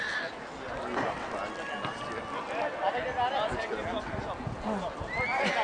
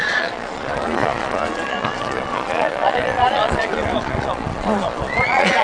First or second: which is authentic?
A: first